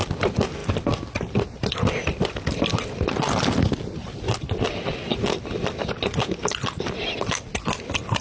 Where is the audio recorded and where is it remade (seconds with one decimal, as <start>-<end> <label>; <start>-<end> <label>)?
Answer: 0.0-8.2 recorded

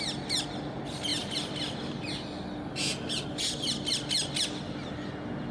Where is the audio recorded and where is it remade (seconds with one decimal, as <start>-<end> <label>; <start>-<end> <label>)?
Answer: 0.0-5.5 recorded

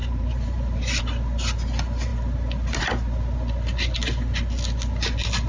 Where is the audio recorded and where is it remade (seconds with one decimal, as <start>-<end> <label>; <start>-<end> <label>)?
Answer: 0.0-1.0 remade; 1.0-5.5 recorded